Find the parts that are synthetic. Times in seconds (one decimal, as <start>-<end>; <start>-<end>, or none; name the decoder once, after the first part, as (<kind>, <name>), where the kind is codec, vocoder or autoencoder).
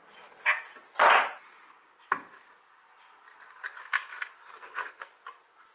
4.4-5.1 (codec, SNAC)